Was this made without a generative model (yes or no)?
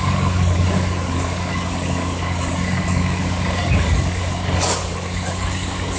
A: no